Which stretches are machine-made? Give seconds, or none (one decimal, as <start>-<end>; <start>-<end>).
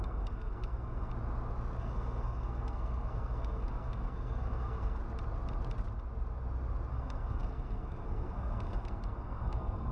0.0-1.1; 1.8-5.0; 6.9-9.9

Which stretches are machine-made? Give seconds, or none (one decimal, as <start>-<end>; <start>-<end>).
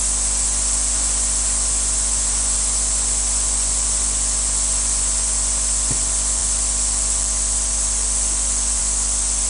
0.0-9.5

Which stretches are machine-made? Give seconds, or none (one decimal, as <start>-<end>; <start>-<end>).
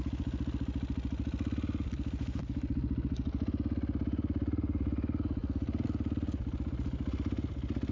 none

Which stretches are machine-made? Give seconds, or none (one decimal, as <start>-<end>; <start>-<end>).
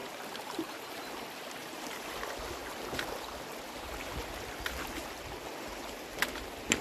0.0-1.1; 1.6-2.2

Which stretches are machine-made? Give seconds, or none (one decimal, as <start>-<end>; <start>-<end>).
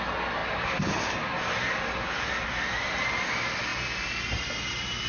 none